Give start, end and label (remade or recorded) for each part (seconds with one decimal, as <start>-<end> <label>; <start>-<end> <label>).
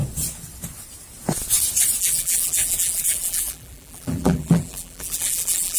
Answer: 0.0-2.0 recorded; 2.0-5.8 remade